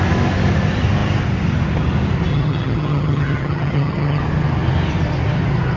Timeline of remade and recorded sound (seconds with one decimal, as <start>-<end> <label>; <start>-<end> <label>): 0.0-2.3 recorded; 2.3-4.2 remade; 4.2-5.8 recorded